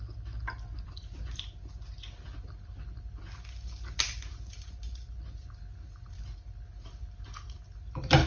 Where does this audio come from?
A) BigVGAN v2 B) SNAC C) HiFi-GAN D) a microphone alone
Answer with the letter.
D